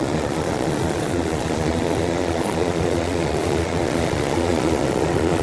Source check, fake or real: fake